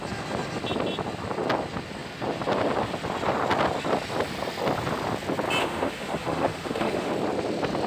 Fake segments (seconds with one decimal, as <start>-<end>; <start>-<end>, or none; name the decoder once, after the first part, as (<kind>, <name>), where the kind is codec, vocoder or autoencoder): 5.6-7.1 (autoencoder, DAC-VAE)